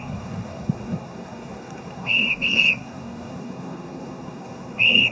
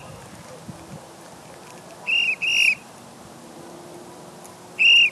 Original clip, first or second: second